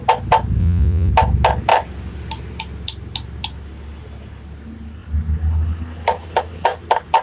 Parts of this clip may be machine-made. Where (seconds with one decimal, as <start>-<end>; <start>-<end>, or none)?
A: 0.6-1.1